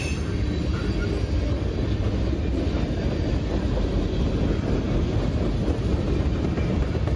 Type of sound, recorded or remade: recorded